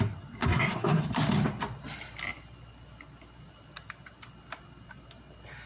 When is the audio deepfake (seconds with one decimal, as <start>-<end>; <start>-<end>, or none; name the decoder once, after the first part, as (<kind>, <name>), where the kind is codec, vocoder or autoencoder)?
0.4-1.0 (codec, SNAC)

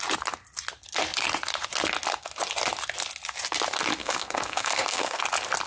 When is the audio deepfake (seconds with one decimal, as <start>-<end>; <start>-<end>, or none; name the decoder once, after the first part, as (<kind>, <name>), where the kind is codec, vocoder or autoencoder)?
4.0-5.2 (codec, SNAC)

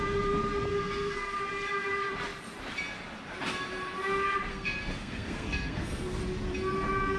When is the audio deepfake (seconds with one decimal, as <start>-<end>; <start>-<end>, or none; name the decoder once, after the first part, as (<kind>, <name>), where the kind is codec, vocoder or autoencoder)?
0.7-1.4 (codec, SNAC); 4.5-6.2

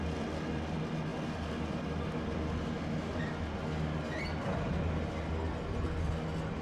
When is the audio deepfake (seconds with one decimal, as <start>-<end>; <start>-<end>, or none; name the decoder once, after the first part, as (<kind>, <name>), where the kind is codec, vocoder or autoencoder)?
none

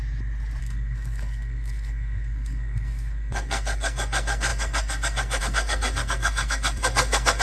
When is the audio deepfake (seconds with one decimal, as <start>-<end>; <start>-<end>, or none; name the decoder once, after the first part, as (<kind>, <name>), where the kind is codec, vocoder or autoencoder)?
0.6-7.4 (codec, SNAC)

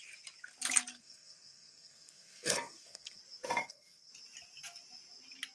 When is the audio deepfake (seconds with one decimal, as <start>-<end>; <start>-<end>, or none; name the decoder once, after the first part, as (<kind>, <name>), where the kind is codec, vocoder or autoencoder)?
0.9-3.2 (codec, SNAC); 3.6-4.1

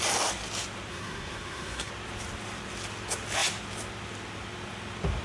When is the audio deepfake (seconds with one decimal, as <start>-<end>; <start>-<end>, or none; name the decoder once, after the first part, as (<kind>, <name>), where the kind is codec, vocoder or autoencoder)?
0.9-1.9 (codec, SNAC)